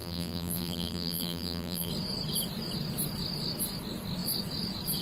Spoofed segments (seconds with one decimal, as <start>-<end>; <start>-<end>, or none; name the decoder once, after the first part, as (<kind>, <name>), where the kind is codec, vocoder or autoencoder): 0.0-1.9 (vocoder, BigVGAN v2)